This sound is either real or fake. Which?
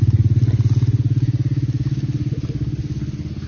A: real